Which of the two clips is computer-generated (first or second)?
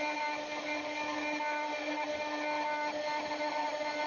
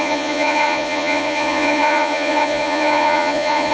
second